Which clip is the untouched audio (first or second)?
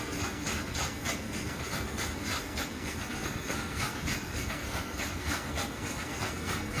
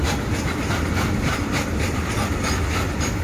second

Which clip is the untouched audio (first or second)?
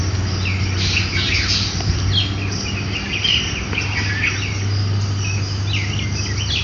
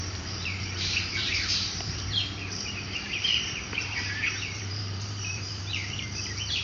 first